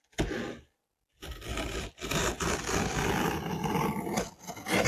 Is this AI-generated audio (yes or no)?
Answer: no